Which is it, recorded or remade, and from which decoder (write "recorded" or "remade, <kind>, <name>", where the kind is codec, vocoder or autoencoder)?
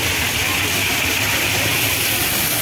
recorded